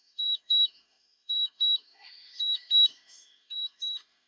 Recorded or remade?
remade